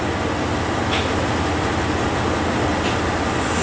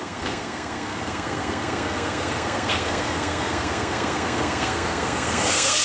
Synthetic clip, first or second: second